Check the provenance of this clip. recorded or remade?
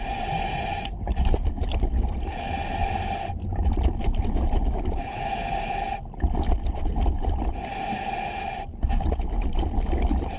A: recorded